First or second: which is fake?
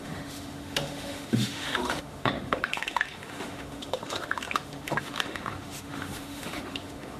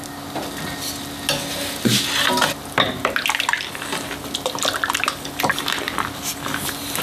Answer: first